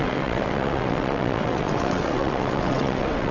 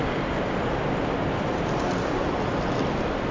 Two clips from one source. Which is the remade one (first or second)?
first